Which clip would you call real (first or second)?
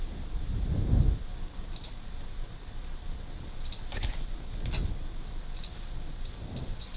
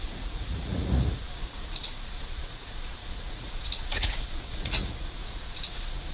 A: first